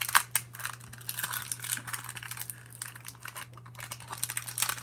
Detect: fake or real real